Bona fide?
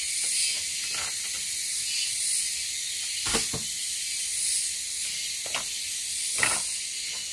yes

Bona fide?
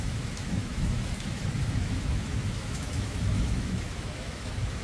no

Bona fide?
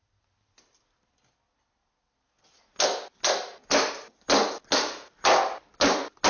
yes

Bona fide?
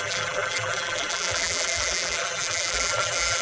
no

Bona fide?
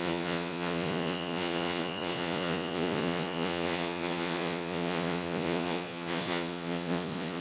no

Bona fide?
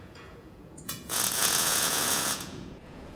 no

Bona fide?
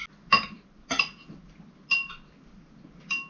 yes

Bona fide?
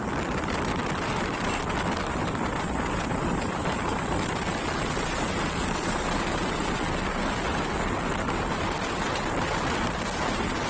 yes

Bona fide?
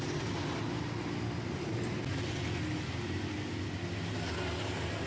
yes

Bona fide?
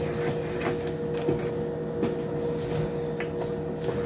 yes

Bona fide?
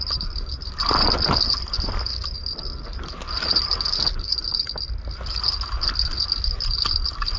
yes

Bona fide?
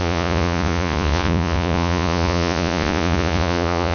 no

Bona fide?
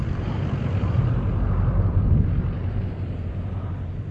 no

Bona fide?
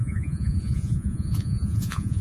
no